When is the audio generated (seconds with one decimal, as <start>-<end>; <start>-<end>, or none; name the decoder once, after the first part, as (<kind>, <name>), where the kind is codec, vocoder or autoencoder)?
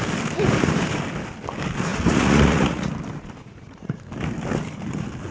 1.9-2.9 (vocoder, Vocos); 3.4-4.1